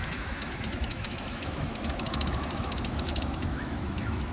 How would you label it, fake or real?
fake